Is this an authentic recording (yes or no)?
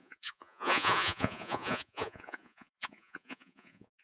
no